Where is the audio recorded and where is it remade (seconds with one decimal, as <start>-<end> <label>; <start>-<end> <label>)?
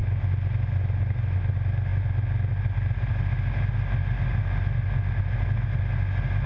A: 0.0-6.5 recorded